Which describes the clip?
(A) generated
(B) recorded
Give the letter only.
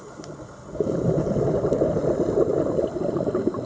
B